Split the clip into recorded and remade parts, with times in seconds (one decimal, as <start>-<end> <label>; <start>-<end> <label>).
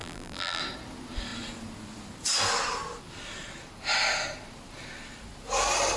0.0-0.6 remade; 0.6-6.0 recorded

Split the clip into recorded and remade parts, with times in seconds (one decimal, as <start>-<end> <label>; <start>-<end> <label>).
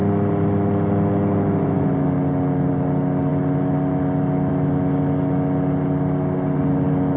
0.0-7.2 recorded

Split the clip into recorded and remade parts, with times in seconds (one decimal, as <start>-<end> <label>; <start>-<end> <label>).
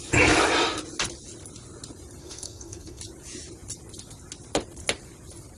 0.0-2.2 recorded; 2.2-3.0 remade; 3.0-5.6 recorded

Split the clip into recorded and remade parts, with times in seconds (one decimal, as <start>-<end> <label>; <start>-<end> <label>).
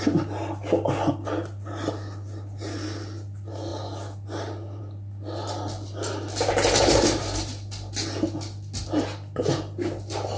0.0-10.4 recorded